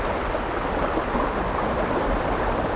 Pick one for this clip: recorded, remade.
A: recorded